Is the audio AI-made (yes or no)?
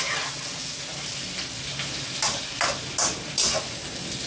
no